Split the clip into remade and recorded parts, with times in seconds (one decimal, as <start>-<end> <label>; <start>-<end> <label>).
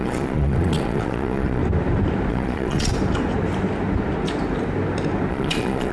0.0-1.6 remade; 1.6-2.3 recorded; 2.3-2.9 remade; 2.9-5.3 recorded; 5.3-5.9 remade